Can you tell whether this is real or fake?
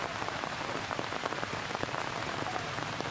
fake